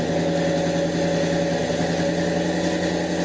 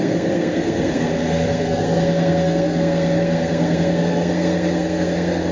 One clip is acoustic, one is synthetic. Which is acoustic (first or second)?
first